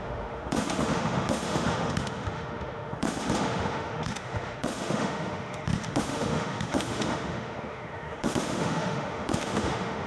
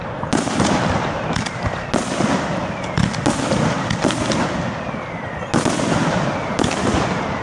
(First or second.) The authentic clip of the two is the second